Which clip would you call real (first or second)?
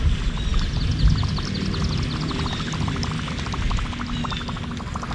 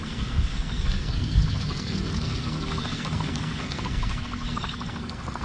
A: first